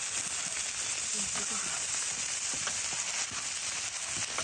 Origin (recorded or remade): recorded